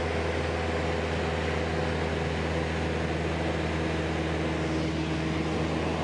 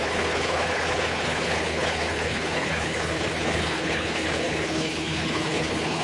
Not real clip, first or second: second